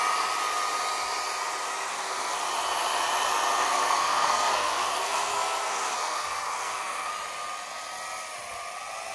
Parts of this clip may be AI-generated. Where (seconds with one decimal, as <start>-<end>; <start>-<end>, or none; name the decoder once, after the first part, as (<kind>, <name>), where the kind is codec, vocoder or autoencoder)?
1.9-2.4 (codec, SNAC); 3.6-7.1